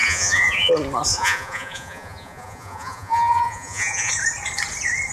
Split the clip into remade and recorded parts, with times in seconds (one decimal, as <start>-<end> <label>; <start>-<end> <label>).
0.0-0.7 remade; 0.7-1.1 recorded; 1.1-4.1 remade; 4.1-5.1 recorded